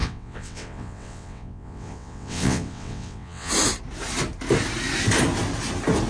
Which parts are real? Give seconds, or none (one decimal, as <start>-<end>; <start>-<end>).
3.5-6.1